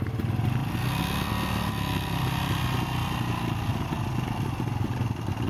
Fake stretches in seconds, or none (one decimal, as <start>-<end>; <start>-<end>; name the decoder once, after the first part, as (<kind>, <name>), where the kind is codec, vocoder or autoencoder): none